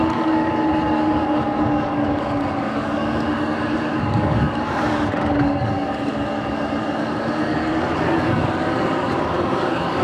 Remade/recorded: remade